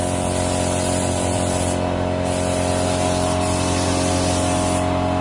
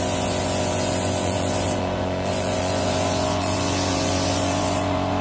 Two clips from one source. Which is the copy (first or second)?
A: second